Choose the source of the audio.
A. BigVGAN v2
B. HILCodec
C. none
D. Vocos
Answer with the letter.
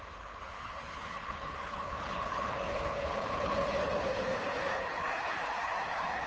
B